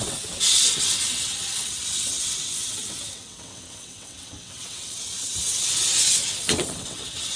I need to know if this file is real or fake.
fake